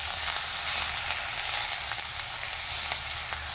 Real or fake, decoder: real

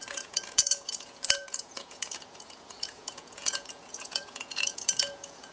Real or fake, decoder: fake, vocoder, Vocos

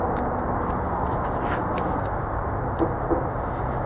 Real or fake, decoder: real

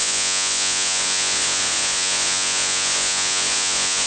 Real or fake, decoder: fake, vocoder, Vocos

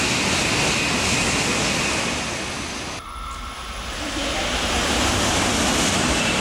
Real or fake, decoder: real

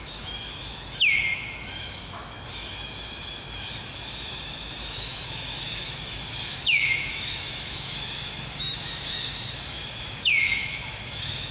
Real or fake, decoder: fake, autoencoder, DAC-VAE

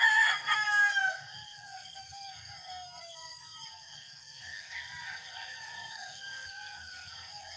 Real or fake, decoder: fake, codec, SNAC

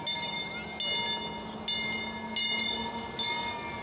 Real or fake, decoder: real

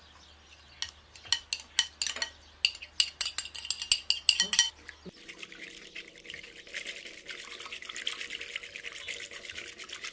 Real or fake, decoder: real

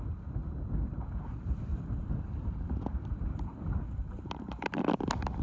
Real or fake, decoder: real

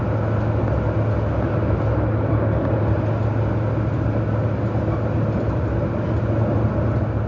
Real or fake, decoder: real